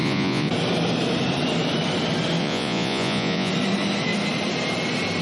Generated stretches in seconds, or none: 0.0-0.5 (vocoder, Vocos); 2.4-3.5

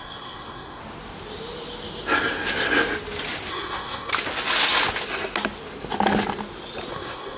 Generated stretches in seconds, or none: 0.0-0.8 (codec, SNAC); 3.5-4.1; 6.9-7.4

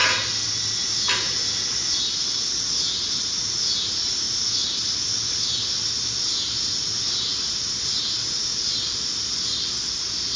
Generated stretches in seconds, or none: none

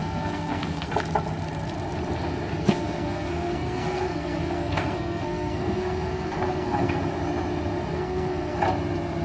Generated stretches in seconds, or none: 0.0-0.9 (codec, SNAC); 2.5-7.0; 7.9-8.6

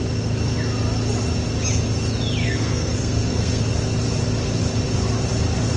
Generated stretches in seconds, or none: 2.4-3.6 (codec, SNAC)

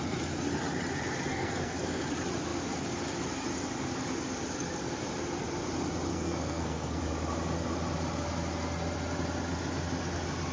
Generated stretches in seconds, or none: 1.3-2.0 (codec, SNAC); 6.1-7.0

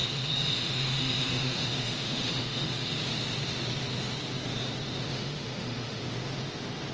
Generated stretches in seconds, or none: 0.0-2.9 (autoencoder, DAC-VAE); 5.1-6.0